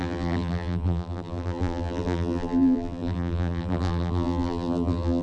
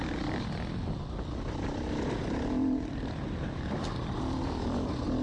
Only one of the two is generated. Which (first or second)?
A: first